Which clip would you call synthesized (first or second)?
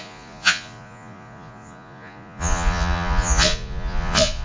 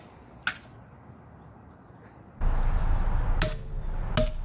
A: first